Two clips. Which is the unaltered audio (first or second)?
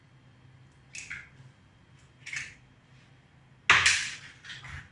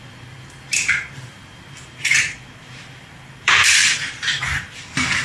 first